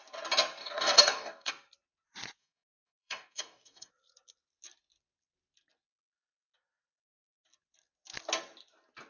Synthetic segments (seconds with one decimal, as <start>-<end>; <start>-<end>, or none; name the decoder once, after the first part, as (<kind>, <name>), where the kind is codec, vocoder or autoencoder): 0.6-1.5 (codec, DAC); 2.4-3.9